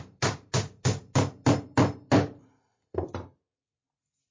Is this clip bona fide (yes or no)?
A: yes